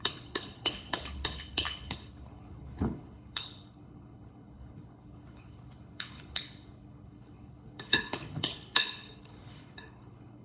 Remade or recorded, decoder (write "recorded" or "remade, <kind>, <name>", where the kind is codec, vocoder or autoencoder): remade, codec, HILCodec